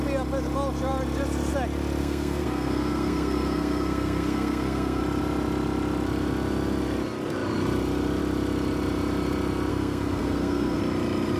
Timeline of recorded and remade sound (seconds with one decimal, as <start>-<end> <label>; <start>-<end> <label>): 0.0-2.0 recorded; 2.0-5.0 remade; 5.0-9.7 recorded; 9.7-10.8 remade; 10.8-11.4 recorded